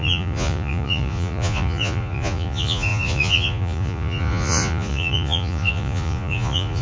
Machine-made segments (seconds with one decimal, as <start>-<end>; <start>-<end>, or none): 0.0-6.8